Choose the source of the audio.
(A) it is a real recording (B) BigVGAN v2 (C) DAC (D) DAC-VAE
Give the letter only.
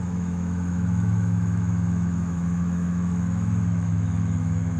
D